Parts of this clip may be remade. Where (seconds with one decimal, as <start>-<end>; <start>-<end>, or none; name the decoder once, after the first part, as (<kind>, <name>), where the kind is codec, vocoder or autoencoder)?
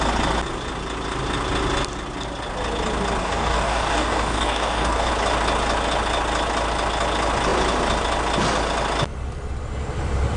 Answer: 3.2-5.1 (codec, DAC)